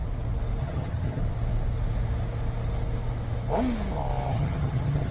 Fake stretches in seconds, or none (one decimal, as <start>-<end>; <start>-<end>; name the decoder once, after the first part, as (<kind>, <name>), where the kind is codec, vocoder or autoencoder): 0.6-1.2 (vocoder, HiFi-GAN); 4.3-5.1

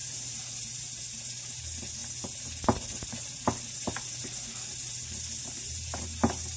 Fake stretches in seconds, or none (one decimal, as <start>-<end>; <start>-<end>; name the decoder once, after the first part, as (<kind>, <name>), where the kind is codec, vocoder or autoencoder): none

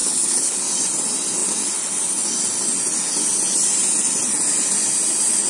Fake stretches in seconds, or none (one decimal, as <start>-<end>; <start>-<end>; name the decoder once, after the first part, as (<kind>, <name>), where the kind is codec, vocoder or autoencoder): 0.0-0.6 (codec, HILCodec)

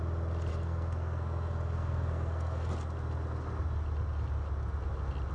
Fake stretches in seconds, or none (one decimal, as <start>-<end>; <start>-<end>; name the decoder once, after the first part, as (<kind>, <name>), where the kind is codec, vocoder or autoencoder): 0.5-2.7 (codec, SNAC)

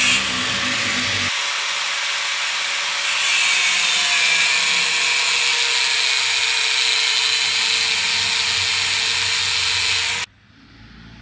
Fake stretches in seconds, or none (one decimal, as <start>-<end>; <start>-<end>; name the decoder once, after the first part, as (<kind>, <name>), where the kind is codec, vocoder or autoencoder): none

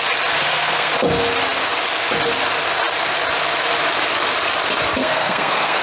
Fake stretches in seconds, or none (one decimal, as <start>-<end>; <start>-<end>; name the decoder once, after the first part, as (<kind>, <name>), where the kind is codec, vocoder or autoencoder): 0.4-0.9 (codec, SNAC); 5.0-5.8